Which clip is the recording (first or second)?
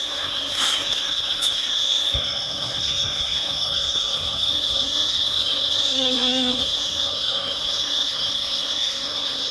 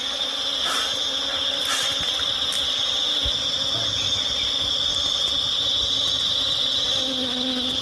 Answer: second